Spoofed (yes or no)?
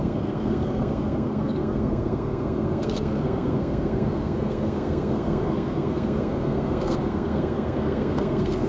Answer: yes